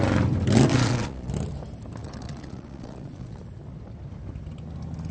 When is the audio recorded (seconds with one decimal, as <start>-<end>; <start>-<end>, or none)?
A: 0.0-0.7; 1.3-2.0; 3.4-5.1